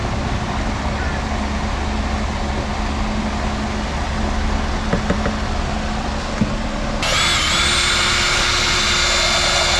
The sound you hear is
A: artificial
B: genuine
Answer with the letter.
B